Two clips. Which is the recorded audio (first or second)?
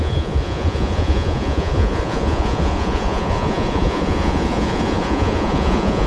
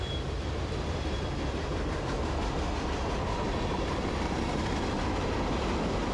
second